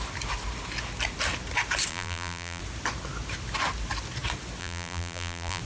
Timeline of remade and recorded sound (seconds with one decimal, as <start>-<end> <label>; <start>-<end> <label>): 0.0-1.9 recorded; 1.9-2.6 remade; 2.6-4.6 recorded; 4.6-5.6 remade